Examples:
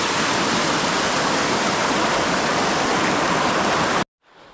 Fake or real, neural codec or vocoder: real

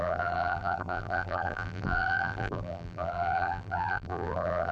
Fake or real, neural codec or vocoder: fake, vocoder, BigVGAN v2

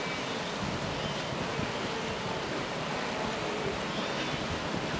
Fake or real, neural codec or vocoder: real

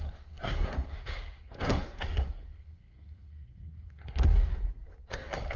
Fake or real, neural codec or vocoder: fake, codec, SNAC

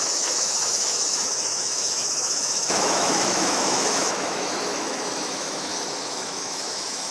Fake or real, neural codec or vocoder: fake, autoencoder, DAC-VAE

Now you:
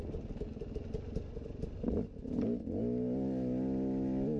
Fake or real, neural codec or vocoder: real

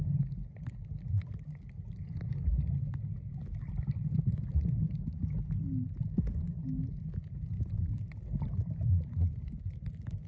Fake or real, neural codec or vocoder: real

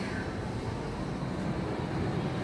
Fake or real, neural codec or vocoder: real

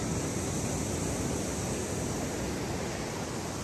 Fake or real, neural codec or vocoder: real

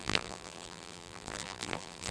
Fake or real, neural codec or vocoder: fake, vocoder, BigVGAN v2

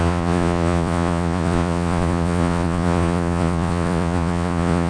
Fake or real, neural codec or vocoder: fake, vocoder, Vocos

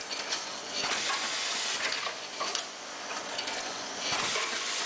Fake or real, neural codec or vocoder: fake, vocoder, Vocos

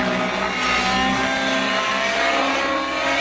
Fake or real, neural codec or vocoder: real